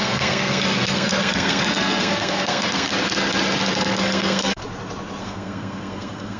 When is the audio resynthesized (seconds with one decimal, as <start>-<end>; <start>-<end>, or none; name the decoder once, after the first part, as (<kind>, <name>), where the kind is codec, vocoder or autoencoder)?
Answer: 0.0-2.9 (codec, SNAC); 3.7-4.6; 5.2-6.4